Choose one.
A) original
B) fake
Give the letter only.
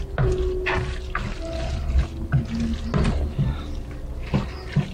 A